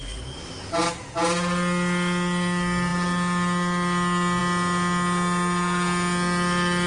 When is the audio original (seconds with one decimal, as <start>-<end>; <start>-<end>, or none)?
0.0-6.9